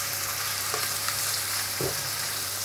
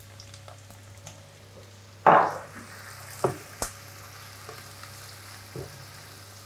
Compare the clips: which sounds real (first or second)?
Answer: second